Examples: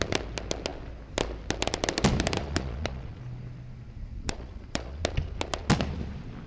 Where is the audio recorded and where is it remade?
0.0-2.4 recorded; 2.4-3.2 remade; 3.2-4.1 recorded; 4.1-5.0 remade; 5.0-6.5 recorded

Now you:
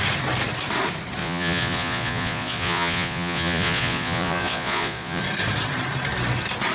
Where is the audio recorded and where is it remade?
0.0-1.2 recorded; 1.2-5.2 remade; 5.2-6.7 recorded

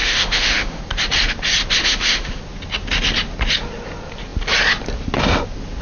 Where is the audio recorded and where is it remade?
0.0-0.8 remade; 0.8-1.8 recorded; 1.8-2.4 remade; 2.4-5.8 recorded

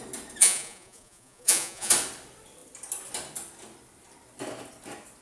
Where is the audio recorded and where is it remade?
0.0-0.4 recorded; 0.4-1.9 remade; 1.9-5.2 recorded

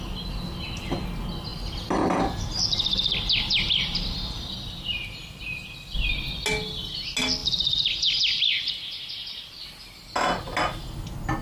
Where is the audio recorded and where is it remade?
0.0-11.4 recorded